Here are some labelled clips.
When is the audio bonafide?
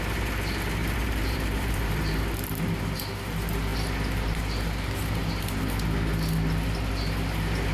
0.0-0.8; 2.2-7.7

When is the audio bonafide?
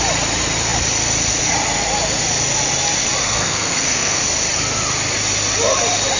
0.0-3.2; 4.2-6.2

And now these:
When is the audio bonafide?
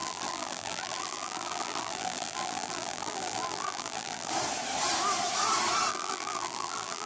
4.3-5.9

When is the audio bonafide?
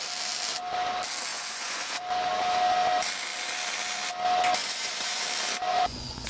0.0-1.3; 2.0-4.6; 5.2-5.7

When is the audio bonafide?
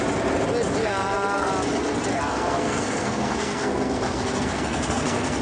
0.0-0.8; 1.5-2.1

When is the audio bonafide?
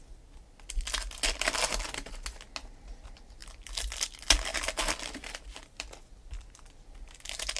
0.0-3.4; 4.0-4.5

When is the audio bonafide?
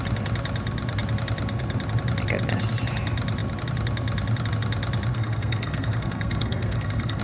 0.0-5.1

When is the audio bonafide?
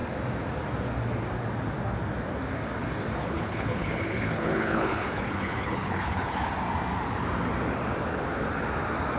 0.0-3.2; 6.5-9.2